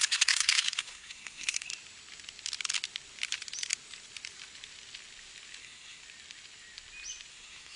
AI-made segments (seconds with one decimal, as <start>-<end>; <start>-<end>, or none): 0.0-1.7; 5.6-6.0; 7.3-7.8